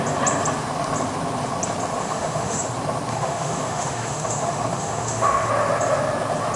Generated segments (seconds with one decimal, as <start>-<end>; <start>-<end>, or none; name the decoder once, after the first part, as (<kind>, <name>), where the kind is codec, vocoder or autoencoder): 2.0-2.6 (autoencoder, DAC-VAE); 3.1-5.5

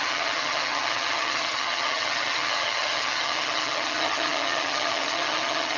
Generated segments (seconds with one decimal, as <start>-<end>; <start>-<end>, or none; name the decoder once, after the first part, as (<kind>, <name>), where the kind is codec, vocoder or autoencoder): 0.0-5.8 (vocoder, HiFi-GAN)

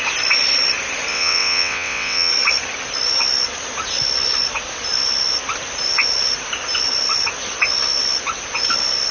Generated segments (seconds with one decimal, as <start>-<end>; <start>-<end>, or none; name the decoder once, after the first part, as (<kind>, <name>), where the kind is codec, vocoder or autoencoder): 1.1-2.3 (vocoder, WaveNeXt)

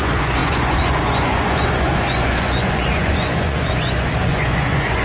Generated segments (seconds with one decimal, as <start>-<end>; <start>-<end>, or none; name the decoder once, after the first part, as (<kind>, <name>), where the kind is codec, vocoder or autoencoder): 0.0-5.0 (vocoder, Vocos)

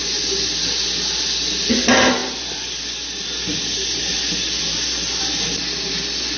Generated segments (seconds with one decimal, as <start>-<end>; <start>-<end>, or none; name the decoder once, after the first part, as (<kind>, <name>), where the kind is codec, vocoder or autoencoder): none